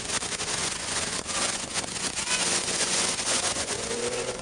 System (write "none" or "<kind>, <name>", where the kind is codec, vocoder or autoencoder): vocoder, Vocos